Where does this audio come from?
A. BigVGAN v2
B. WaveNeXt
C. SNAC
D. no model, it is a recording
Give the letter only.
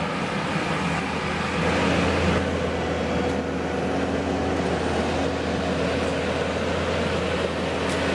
D